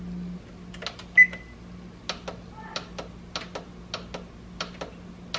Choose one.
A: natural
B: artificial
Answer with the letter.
A